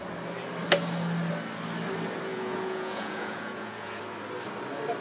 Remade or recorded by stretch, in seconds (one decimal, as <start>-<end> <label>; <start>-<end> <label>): 0.0-2.3 recorded; 2.3-4.0 remade; 4.0-5.0 recorded